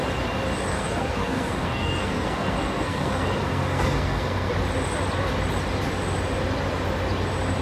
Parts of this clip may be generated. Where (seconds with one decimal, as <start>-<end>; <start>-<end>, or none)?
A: 0.7-4.5